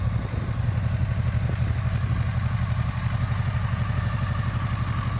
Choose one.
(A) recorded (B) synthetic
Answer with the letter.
A